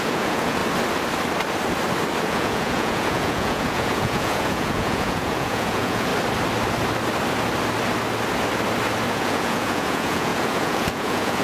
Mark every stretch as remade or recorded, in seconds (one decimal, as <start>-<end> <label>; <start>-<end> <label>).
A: 0.0-0.6 remade; 0.6-2.2 recorded; 2.2-6.1 remade; 6.1-9.1 recorded; 9.1-11.4 remade